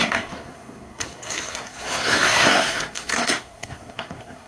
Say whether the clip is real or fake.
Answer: fake